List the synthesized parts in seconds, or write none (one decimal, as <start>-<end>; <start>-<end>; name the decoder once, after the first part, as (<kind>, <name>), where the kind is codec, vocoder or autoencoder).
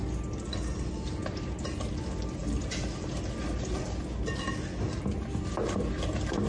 none